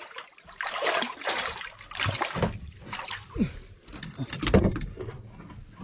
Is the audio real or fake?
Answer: real